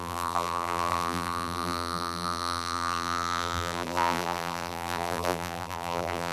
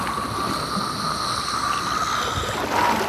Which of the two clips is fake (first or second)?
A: first